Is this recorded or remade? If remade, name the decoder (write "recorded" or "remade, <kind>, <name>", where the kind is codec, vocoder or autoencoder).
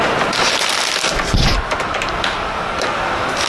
recorded